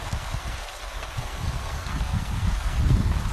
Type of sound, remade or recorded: remade